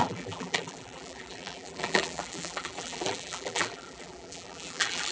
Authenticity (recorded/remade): remade